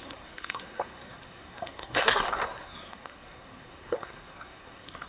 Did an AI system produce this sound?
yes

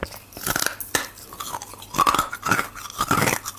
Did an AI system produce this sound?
no